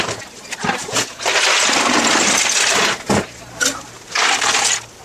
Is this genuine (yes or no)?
yes